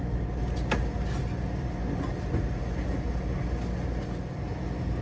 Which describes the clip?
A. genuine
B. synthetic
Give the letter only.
A